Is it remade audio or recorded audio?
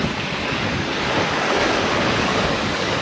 remade